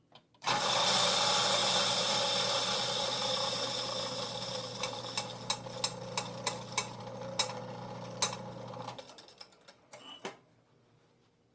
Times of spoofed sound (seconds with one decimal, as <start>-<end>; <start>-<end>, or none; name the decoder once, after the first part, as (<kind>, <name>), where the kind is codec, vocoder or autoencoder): 1.6-5.0 (vocoder, BigVGAN v2)